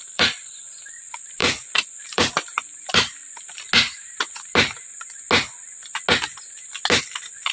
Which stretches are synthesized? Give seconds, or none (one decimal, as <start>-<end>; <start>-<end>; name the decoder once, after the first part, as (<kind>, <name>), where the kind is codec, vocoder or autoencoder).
0.0-3.2 (vocoder, BigVGAN v2); 7.0-7.5